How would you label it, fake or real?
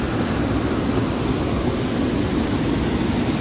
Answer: real